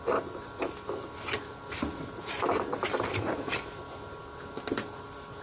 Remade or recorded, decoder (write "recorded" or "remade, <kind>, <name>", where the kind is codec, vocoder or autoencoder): recorded